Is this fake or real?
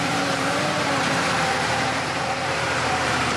fake